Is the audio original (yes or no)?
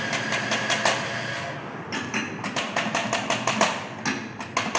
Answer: yes